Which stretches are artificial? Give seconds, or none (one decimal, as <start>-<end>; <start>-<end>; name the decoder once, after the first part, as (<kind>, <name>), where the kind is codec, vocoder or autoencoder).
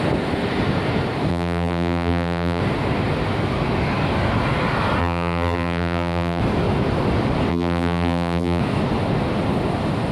1.3-2.6 (vocoder, BigVGAN v2); 5.0-6.4; 7.5-8.6